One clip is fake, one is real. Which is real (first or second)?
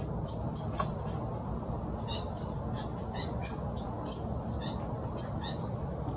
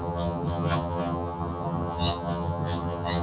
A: first